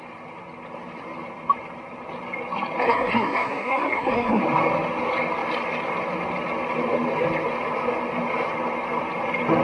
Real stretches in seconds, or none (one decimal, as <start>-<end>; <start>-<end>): 0.0-2.8; 4.4-9.6